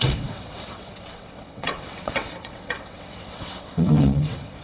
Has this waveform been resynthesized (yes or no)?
yes